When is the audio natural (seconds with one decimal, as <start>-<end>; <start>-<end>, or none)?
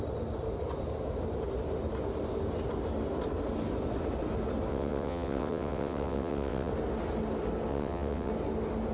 0.0-4.7; 6.7-7.7; 8.3-8.9